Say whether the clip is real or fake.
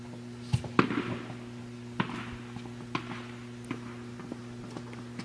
real